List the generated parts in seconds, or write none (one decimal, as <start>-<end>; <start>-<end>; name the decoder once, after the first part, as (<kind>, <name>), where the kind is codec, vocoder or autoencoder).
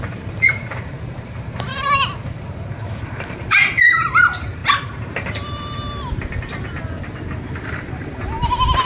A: 0.0-4.6 (vocoder, BigVGAN v2); 7.7-8.8